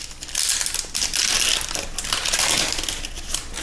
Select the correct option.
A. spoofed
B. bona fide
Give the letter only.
B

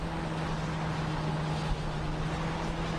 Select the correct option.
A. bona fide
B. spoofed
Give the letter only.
A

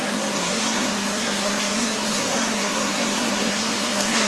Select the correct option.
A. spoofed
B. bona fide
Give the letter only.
A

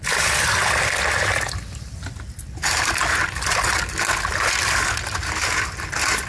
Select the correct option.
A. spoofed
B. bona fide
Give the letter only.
B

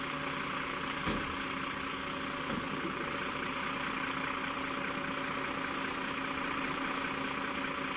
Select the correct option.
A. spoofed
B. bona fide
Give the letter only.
B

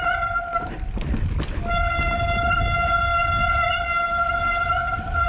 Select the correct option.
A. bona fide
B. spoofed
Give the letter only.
A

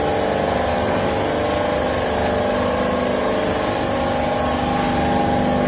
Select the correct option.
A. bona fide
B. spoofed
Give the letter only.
A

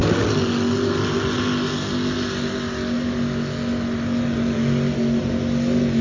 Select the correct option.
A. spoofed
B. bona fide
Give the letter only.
B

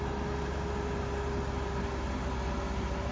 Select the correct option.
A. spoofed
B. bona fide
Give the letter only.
B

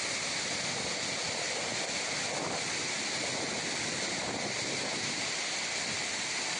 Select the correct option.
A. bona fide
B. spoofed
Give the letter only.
A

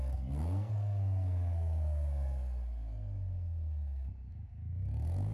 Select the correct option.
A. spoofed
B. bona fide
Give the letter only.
A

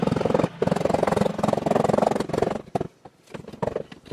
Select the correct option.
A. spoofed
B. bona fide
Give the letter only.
B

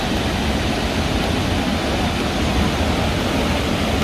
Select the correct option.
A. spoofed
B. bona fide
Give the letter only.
B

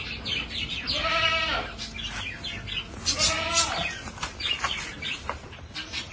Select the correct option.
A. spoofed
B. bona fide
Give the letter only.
B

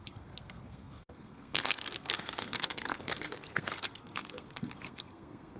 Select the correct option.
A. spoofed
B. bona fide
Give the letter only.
A